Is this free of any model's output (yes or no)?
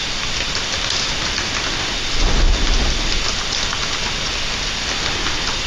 yes